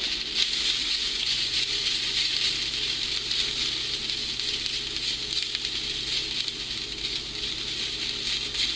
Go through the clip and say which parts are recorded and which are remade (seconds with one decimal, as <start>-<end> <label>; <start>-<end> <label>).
0.0-0.8 recorded; 0.8-2.3 remade; 2.3-8.8 recorded